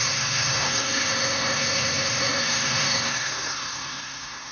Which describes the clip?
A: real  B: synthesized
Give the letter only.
B